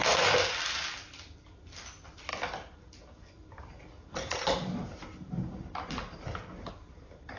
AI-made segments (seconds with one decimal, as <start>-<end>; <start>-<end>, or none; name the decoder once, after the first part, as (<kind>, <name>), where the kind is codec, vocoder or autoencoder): none